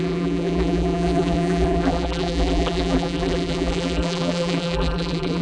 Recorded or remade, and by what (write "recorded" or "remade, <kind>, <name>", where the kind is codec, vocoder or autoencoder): remade, vocoder, BigVGAN v2